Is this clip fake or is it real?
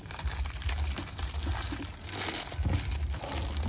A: real